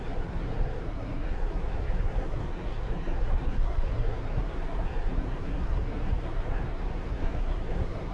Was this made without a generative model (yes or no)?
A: no